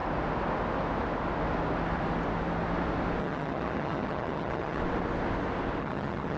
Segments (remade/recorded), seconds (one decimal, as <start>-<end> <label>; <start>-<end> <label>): 0.0-3.2 recorded; 3.2-4.8 remade; 4.8-5.8 recorded; 5.8-6.4 remade